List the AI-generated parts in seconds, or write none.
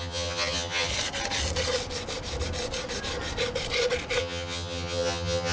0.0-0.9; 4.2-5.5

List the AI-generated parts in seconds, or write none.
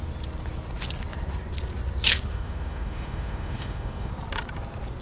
2.3-4.1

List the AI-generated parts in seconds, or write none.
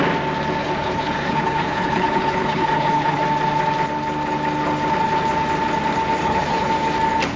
0.6-3.2; 6.2-6.7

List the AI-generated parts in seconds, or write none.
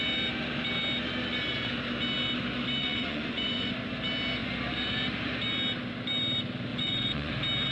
2.8-3.7; 6.7-7.3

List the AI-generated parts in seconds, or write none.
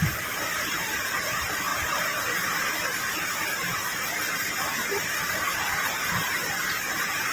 0.0-1.7; 5.2-7.3